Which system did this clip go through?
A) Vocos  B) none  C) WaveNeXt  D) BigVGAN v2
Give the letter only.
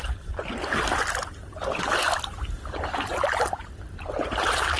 B